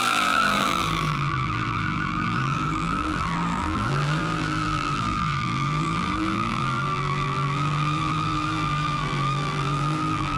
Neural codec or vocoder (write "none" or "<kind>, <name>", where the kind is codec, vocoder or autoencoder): vocoder, BigVGAN v2